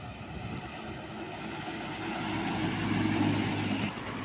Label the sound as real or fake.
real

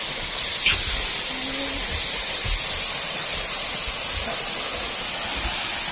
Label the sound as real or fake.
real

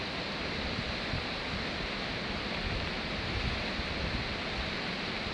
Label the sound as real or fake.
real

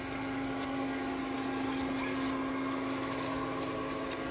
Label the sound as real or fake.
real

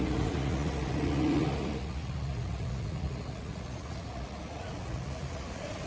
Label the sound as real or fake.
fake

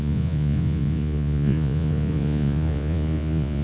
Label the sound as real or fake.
fake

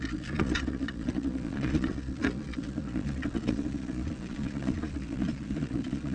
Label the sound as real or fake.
fake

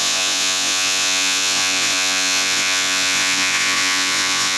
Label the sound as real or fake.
fake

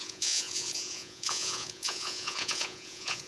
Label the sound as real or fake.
fake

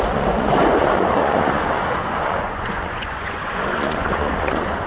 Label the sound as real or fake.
fake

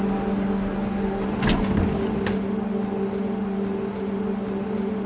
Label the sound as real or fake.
real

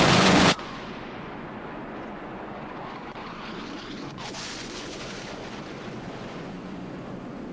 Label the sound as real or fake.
fake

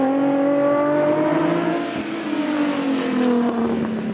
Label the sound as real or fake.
real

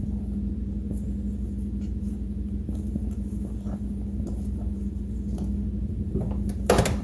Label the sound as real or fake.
real